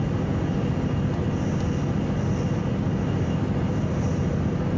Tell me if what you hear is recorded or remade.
recorded